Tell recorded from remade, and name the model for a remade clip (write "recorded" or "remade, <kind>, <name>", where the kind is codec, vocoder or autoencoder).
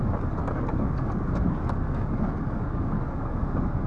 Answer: remade, codec, DAC